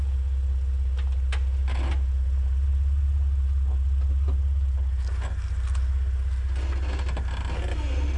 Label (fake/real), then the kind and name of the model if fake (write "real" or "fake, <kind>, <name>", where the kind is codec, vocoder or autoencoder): real